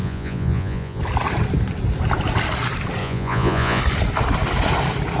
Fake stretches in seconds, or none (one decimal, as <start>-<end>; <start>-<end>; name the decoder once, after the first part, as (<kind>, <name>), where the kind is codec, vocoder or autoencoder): 0.0-1.0 (vocoder, Vocos); 3.0-3.8